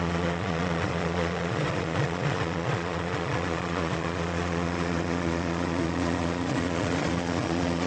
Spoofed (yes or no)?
yes